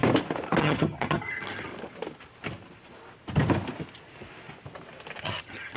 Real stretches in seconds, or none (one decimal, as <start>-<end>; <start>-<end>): 0.0-0.6; 1.7-5.2